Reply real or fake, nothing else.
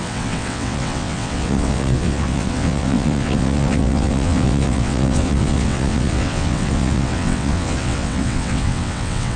fake